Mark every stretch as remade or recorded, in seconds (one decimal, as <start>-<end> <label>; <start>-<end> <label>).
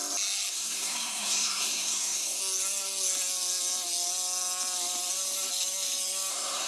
0.0-0.5 recorded; 0.5-2.4 remade; 2.4-6.3 recorded; 6.3-6.7 remade